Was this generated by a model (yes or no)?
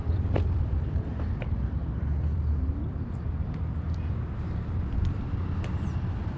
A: yes